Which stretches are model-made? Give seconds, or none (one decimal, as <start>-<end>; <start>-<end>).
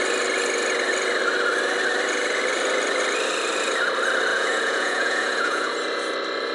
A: 4.3-5.7